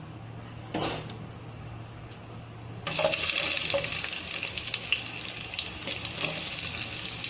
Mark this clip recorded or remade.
recorded